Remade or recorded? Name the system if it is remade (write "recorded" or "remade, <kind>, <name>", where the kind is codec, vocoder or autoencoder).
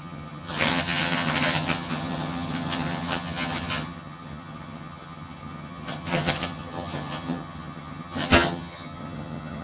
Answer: remade, vocoder, HiFi-GAN